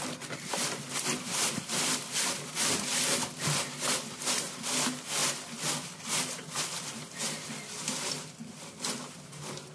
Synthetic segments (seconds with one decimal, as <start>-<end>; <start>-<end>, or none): none